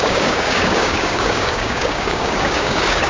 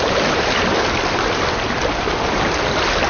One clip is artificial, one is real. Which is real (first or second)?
second